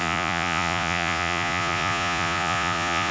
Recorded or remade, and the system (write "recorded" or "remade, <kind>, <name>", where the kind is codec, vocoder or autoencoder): remade, vocoder, Vocos